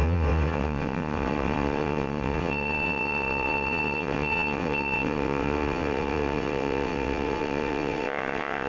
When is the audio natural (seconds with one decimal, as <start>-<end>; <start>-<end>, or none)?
none